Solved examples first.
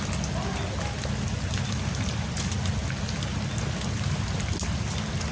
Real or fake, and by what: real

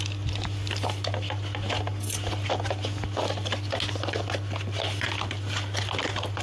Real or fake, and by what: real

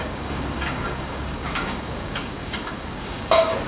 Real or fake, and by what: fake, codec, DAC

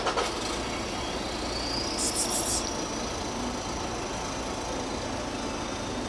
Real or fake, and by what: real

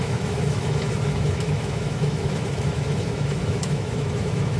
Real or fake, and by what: fake, autoencoder, DAC-VAE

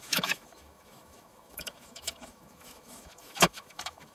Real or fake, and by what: fake, autoencoder, DAC-VAE